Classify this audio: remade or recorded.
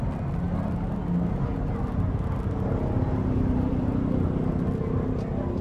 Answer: recorded